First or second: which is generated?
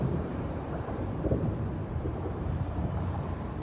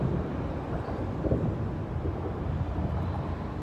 first